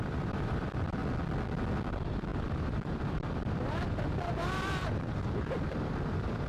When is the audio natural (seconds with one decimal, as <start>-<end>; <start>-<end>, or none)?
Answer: 1.0-1.9

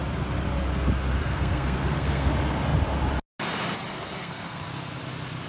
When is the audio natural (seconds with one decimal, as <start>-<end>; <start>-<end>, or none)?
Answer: 0.0-1.2; 2.3-3.9; 4.6-5.5

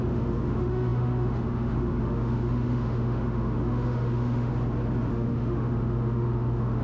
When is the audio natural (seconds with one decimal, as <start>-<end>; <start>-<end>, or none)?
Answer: 4.5-5.1

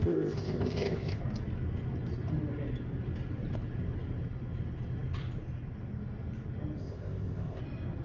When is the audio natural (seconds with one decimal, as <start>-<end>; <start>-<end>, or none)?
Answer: 1.2-6.8; 7.6-8.0

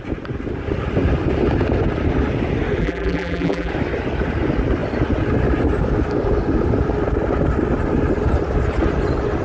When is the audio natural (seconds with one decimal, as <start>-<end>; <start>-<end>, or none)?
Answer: 0.0-2.8; 3.7-9.4

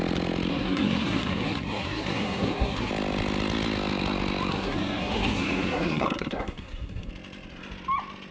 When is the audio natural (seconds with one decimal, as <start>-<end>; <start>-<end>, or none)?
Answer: 0.0-0.5; 2.9-4.5; 7.1-8.3

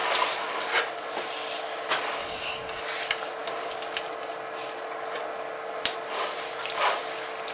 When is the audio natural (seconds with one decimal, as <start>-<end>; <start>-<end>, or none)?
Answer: 0.0-2.2; 2.8-7.5